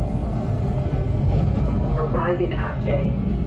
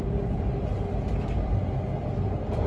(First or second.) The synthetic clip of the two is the first